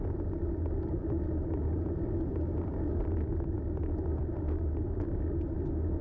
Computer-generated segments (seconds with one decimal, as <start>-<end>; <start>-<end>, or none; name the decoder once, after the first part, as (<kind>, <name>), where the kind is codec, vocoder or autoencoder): none